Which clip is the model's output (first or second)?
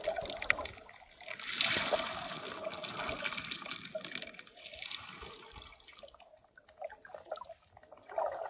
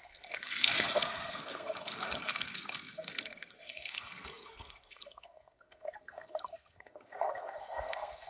second